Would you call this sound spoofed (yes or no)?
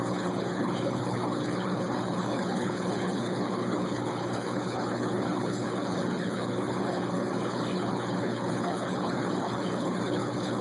yes